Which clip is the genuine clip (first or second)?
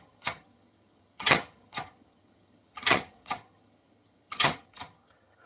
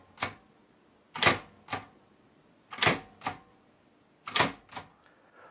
second